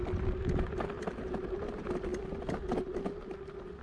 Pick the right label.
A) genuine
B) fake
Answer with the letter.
A